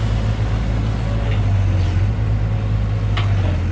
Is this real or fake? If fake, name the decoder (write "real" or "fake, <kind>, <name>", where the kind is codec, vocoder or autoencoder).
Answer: real